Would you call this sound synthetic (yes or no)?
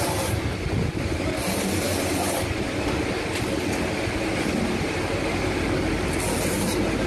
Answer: no